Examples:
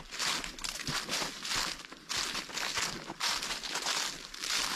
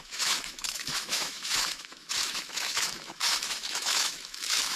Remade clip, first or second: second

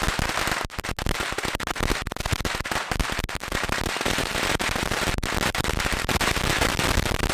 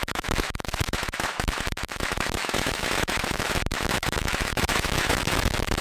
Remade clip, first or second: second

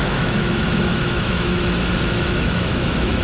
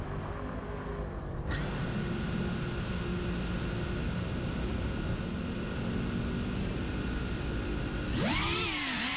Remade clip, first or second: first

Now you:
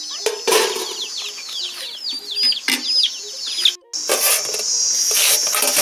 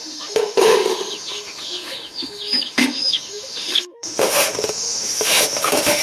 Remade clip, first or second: second